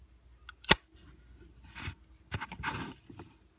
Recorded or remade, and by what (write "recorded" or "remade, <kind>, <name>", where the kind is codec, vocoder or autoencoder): recorded